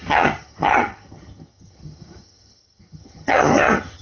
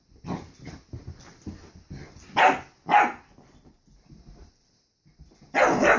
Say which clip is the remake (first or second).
first